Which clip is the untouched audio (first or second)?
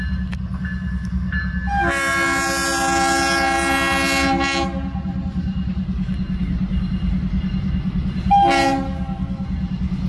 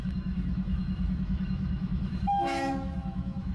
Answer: first